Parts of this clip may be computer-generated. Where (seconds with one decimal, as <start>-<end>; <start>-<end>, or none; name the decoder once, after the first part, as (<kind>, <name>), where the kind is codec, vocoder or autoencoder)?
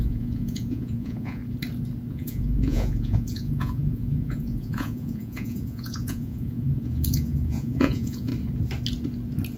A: 0.0-1.4 (vocoder, Vocos); 2.1-8.3